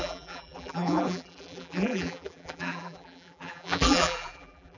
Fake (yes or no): yes